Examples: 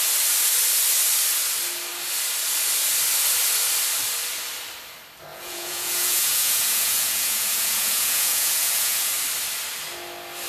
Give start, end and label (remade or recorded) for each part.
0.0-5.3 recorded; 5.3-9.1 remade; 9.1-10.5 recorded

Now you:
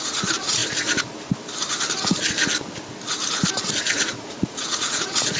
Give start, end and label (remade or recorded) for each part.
0.0-0.6 remade; 0.6-3.8 recorded; 3.8-5.4 remade